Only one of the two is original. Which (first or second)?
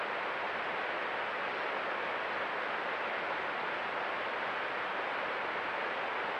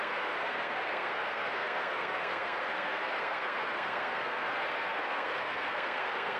first